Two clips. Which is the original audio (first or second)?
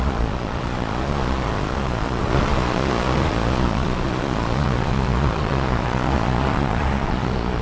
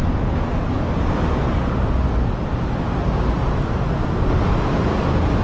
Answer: second